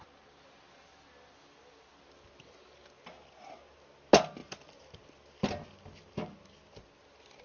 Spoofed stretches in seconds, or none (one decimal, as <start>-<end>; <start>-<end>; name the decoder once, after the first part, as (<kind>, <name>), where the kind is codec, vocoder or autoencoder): none